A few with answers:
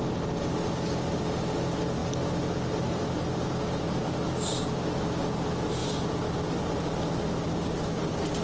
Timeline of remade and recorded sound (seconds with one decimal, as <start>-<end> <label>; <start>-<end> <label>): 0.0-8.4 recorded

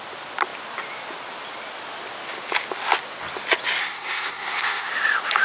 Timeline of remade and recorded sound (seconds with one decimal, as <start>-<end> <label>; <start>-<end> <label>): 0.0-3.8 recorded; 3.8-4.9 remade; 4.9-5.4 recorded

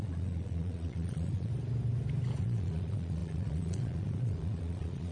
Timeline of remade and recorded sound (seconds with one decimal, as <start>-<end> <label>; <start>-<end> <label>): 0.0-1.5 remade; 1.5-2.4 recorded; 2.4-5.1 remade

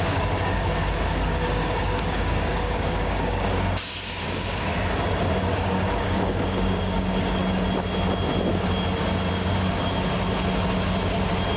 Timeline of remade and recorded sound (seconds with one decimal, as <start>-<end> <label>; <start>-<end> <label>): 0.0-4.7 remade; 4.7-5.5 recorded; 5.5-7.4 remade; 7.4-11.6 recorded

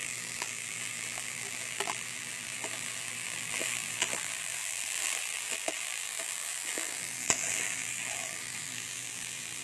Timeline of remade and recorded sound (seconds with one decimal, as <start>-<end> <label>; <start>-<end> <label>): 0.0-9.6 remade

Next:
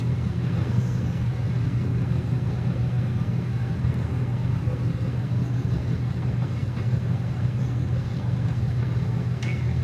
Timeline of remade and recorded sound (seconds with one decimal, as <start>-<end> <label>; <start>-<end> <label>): 0.0-9.8 remade